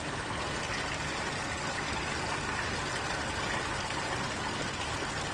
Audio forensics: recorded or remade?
recorded